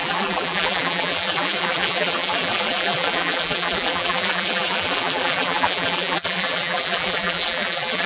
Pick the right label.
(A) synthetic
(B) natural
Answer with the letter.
A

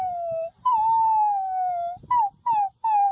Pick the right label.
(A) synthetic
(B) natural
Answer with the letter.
B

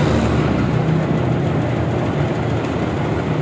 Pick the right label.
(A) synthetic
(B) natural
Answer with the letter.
B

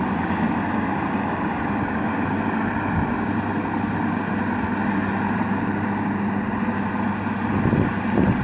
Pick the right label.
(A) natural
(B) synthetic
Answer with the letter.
A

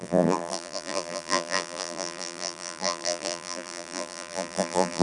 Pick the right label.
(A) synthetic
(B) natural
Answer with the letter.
A